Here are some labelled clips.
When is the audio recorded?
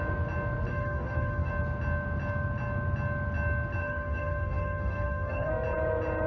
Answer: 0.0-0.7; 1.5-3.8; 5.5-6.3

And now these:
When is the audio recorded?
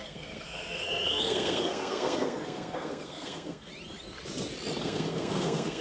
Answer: 3.7-4.8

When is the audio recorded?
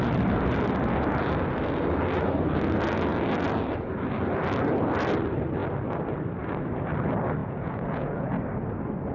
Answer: 0.0-7.4; 8.3-9.1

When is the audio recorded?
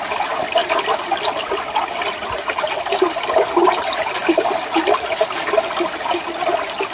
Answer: 0.0-6.9